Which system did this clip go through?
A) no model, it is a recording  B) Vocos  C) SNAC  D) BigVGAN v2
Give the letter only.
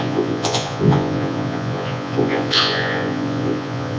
B